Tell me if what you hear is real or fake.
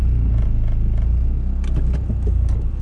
real